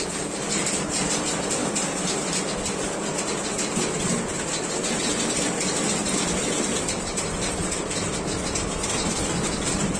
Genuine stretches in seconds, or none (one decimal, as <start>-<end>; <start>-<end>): 0.0-10.0